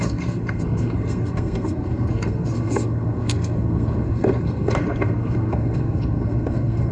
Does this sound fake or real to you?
fake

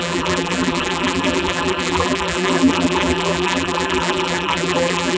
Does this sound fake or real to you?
fake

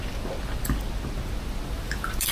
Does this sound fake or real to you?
real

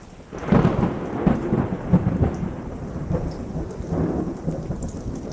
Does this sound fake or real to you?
real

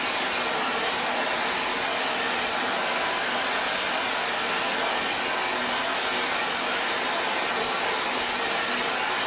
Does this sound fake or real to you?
real